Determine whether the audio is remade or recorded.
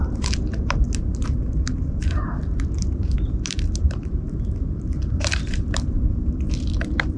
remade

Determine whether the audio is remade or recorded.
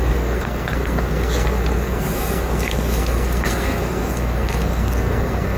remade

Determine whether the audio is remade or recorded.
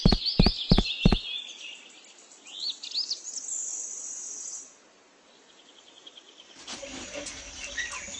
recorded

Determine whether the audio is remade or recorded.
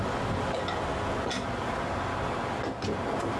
recorded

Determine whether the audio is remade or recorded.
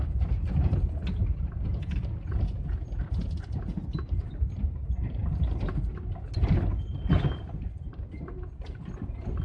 recorded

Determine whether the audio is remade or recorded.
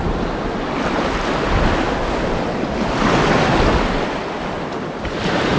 recorded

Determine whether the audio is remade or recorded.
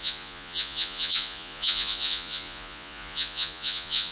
remade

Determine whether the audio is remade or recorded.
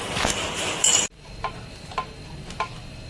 recorded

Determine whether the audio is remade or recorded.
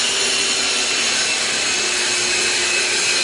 recorded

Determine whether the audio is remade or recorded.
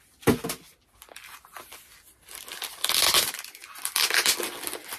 recorded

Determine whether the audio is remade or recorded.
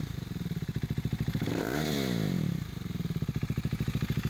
remade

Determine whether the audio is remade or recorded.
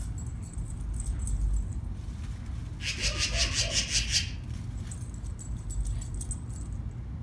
recorded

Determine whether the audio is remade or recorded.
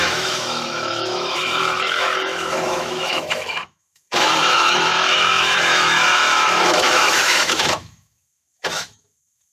remade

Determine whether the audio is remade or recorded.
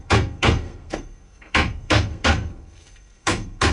remade